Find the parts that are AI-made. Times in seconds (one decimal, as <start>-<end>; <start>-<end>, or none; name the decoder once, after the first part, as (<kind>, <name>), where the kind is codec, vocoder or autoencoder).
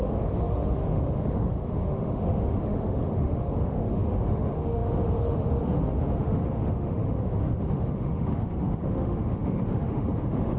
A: 0.0-10.6 (autoencoder, DAC-VAE)